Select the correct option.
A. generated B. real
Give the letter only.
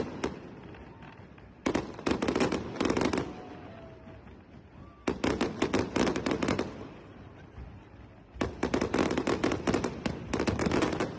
B